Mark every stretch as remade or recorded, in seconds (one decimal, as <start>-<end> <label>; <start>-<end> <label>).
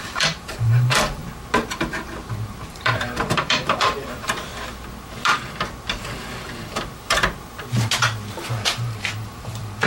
0.0-1.2 remade; 1.2-2.7 recorded; 2.7-4.5 remade; 4.5-8.5 recorded; 8.5-9.9 remade